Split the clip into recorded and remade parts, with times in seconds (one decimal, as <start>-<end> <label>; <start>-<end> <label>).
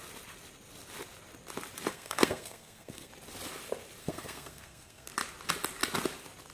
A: 0.0-1.9 recorded; 1.9-3.1 remade; 3.1-4.0 recorded; 4.0-5.1 remade; 5.1-6.5 recorded